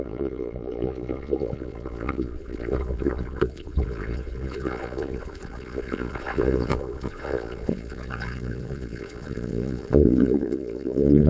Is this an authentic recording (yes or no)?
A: no